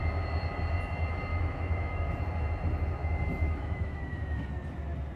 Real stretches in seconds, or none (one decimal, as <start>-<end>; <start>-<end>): 0.0-1.3; 2.1-3.0; 4.5-5.2